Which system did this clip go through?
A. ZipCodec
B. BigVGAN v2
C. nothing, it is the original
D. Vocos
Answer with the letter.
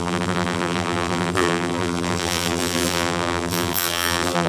B